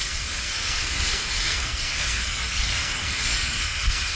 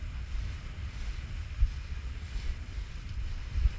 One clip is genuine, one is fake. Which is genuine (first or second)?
second